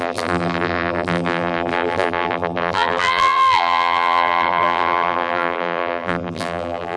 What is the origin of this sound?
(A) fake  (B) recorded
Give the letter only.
A